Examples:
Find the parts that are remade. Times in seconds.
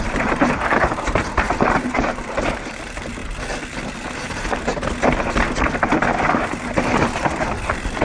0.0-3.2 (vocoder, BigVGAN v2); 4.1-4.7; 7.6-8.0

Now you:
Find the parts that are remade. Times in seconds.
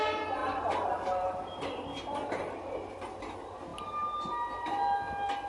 none